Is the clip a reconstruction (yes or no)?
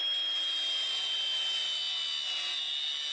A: no